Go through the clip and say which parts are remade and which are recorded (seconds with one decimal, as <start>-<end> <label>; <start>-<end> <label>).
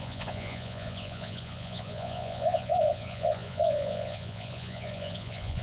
0.0-5.6 remade